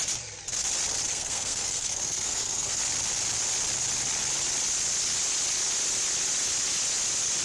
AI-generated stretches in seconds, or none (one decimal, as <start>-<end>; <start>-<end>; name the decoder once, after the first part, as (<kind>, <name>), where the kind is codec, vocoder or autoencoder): 1.1-2.8 (codec, SNAC)